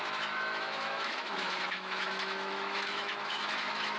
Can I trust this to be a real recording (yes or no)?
no